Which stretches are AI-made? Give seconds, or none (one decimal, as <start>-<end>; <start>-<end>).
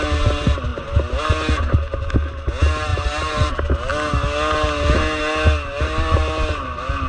none